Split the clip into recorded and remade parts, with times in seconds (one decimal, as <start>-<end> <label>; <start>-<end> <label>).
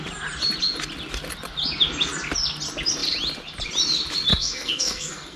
0.0-4.3 recorded; 4.3-5.4 remade